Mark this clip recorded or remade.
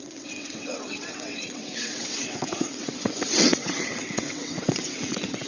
remade